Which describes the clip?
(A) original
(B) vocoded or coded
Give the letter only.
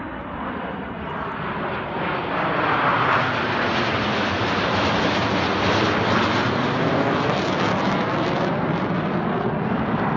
A